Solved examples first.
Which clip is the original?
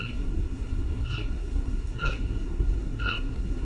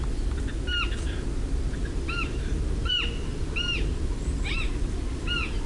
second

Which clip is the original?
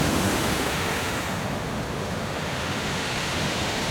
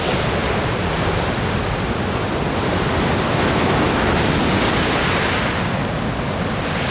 second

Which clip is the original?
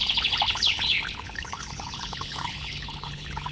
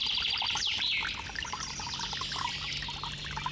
second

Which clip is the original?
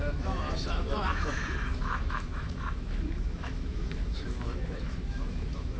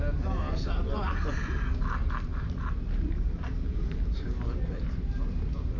second